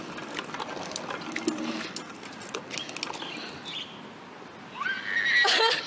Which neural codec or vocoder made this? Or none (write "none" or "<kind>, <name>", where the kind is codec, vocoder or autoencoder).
none